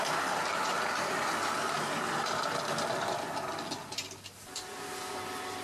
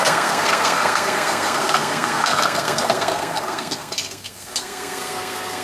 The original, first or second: first